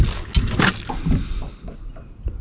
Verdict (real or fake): real